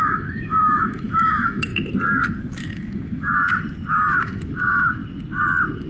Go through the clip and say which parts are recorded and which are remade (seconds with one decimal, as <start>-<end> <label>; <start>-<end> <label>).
0.0-1.7 remade; 1.7-2.4 recorded; 2.4-3.4 remade; 3.4-3.9 recorded; 3.9-5.0 remade; 5.0-5.9 recorded